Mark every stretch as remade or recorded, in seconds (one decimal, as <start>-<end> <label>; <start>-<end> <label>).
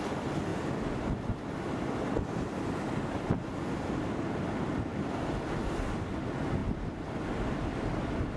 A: 0.0-8.4 recorded